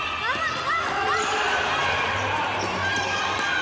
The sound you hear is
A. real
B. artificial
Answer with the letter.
A